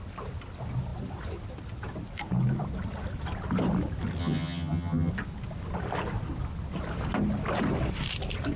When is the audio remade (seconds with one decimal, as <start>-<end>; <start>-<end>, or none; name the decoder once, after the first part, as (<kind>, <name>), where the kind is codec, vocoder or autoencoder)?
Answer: 4.2-5.1 (vocoder, HiFi-GAN)